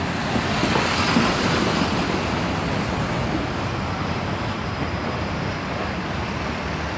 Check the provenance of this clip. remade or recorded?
recorded